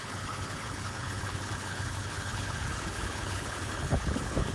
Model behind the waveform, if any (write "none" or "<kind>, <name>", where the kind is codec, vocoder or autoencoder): codec, HILCodec